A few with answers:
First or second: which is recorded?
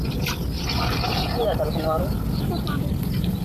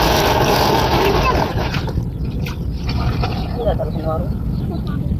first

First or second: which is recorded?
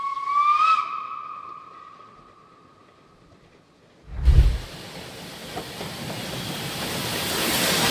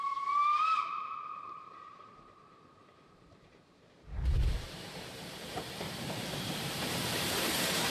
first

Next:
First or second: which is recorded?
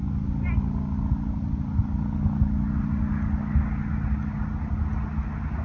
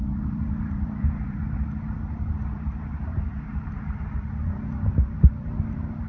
first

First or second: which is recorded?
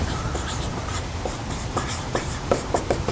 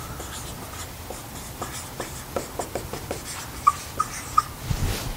second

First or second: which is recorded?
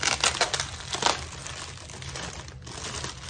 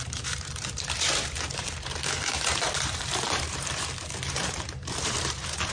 first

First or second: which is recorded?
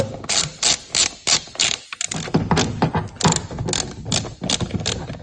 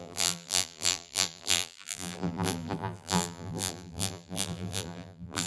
first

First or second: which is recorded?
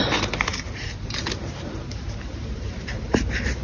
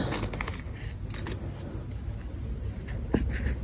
second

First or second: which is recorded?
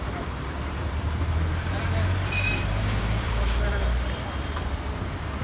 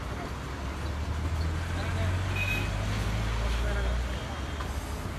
second